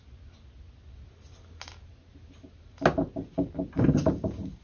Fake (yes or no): no